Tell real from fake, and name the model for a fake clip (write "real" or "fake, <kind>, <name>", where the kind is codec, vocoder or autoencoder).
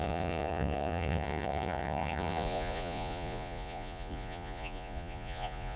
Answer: fake, vocoder, Vocos